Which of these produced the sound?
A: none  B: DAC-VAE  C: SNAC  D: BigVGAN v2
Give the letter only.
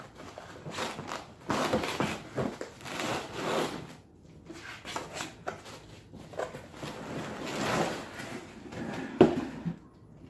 A